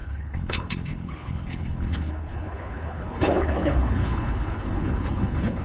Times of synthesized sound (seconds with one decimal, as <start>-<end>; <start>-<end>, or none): 0.0-5.6